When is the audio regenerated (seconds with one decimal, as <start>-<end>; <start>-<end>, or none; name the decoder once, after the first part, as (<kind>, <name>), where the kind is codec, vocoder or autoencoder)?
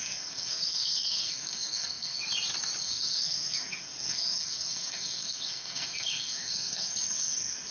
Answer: 0.0-2.2 (codec, SNAC); 2.8-7.7